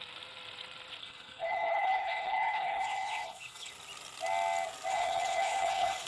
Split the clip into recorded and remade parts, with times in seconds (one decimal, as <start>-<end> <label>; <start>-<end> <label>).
0.0-1.0 recorded; 1.0-3.7 remade; 3.7-4.9 recorded; 4.9-6.1 remade